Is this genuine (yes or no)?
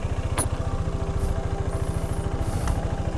yes